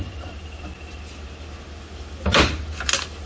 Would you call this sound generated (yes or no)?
no